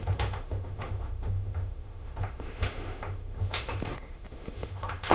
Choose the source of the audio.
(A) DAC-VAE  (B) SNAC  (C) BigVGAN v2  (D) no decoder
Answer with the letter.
A